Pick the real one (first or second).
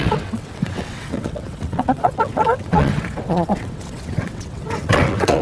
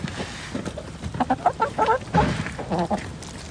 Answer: second